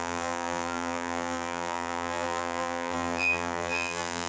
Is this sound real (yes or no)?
no